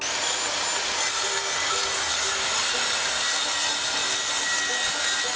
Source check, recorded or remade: recorded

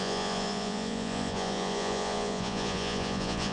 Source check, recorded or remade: remade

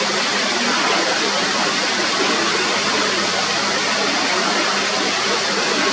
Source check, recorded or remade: recorded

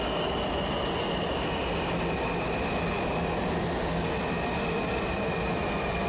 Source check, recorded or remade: recorded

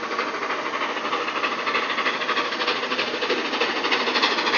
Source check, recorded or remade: recorded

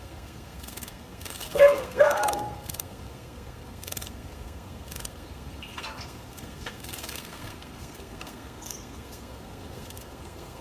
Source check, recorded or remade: remade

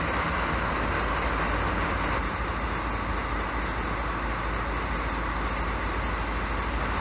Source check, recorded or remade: recorded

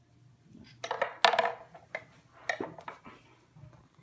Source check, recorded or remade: recorded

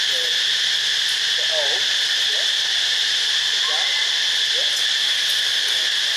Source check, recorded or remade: recorded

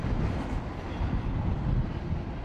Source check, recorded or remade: recorded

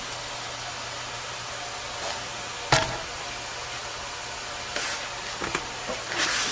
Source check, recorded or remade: recorded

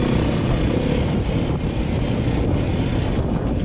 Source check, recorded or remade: recorded